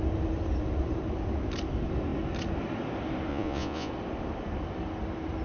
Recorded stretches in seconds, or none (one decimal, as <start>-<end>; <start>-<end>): 0.0-3.3; 3.9-5.4